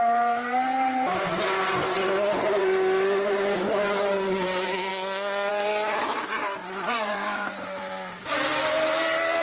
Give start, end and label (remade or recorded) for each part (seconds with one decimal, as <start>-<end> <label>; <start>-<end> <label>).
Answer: 0.0-1.3 remade; 1.3-2.4 recorded; 2.4-4.9 remade; 4.9-5.5 recorded; 5.5-9.4 remade